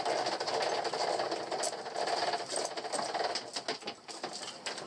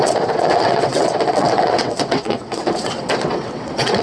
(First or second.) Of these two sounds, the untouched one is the first